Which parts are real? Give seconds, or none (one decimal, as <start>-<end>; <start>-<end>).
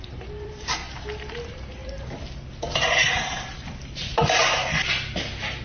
0.8-1.4; 4.6-5.6